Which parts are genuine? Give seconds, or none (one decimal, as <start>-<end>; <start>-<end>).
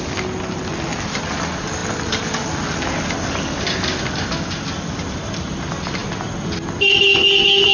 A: 0.0-7.7